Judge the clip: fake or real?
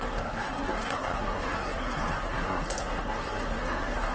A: fake